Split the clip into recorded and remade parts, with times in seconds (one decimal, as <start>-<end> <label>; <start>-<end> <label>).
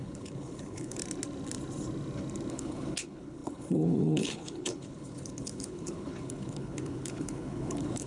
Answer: 0.0-1.0 remade; 1.0-2.5 recorded; 2.5-8.1 remade